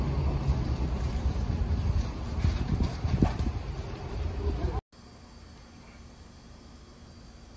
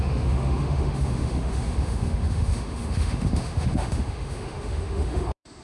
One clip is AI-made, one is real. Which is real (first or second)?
first